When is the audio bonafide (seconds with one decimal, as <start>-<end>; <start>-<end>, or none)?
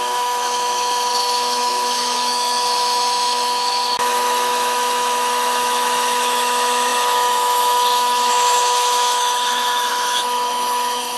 none